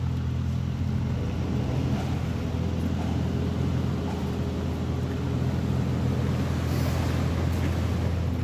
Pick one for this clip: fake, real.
real